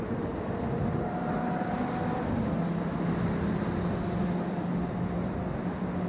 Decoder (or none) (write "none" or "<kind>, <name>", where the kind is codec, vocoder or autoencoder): none